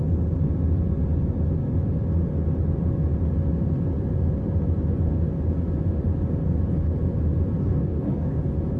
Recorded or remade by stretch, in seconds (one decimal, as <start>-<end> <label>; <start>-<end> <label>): 0.0-7.6 recorded; 7.6-8.4 remade; 8.4-8.8 recorded